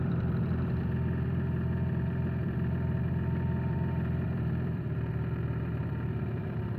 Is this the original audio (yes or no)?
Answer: no